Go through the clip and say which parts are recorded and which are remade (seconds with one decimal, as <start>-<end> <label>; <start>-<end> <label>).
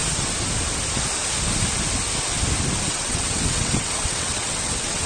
0.0-2.9 recorded; 2.9-5.1 remade